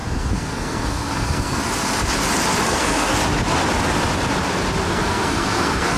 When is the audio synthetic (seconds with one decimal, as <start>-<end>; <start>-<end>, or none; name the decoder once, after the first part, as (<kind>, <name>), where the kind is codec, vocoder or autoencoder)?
0.0-1.6 (codec, SNAC); 2.6-3.1; 4.9-6.0